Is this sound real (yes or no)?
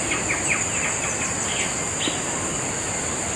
yes